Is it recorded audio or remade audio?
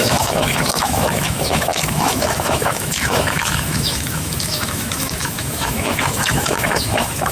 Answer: remade